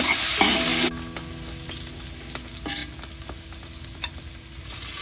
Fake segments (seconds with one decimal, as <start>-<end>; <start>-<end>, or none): none